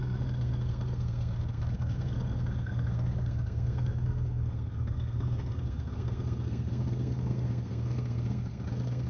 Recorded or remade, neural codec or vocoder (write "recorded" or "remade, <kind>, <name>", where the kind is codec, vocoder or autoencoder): remade, codec, SNAC